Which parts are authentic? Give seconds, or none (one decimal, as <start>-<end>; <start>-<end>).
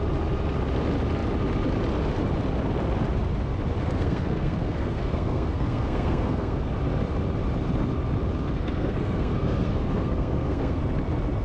0.0-3.8; 6.7-8.4; 10.8-11.4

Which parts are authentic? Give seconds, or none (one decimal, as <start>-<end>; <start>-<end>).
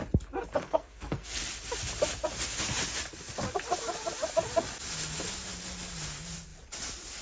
0.0-0.6; 1.4-7.2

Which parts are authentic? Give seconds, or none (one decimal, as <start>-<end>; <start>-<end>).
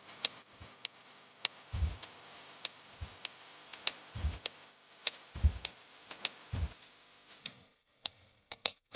0.0-7.4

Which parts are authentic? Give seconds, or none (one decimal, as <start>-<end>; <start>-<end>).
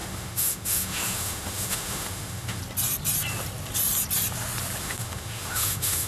2.6-4.8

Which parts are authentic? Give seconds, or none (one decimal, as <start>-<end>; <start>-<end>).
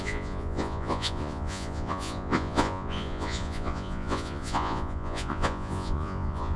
none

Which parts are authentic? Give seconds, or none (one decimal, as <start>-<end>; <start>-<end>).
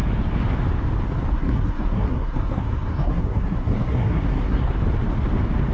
0.0-1.3; 4.7-5.7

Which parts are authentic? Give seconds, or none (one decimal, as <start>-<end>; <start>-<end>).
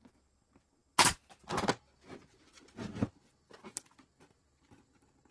0.0-5.3